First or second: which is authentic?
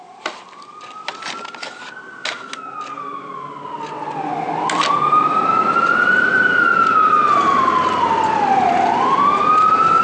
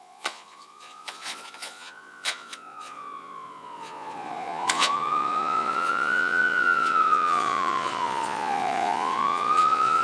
first